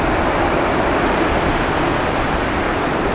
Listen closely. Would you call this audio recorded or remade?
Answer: recorded